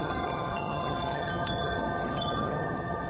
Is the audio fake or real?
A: fake